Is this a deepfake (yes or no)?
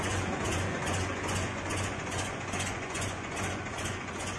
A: yes